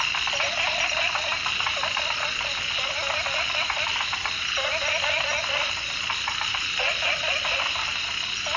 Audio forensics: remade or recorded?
recorded